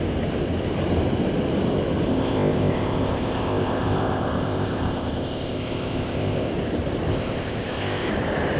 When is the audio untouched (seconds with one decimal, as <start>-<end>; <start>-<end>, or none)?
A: 0.0-2.1; 6.5-7.1; 8.1-8.6